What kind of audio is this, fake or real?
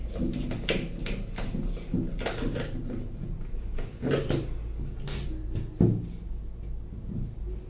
real